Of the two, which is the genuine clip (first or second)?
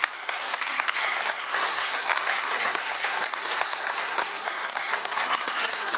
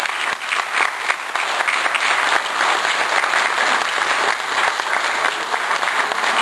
second